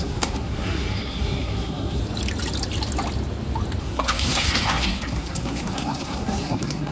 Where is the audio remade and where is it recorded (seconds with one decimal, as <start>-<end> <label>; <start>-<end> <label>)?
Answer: 0.0-2.0 remade; 2.0-3.8 recorded; 3.8-6.9 remade